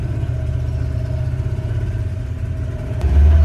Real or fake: real